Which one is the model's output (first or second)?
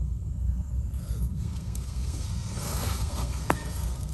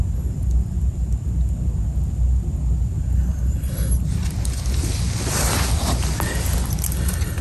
first